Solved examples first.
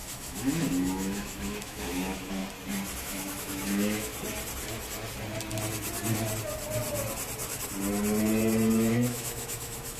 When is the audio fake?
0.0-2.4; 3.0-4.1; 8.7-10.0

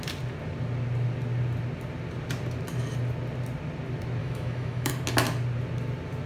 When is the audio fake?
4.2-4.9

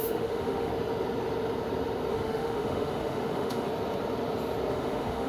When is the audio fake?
0.0-0.7; 2.1-3.7; 4.7-5.3

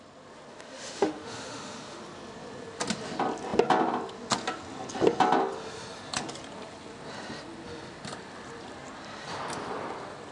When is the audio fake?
0.5-2.0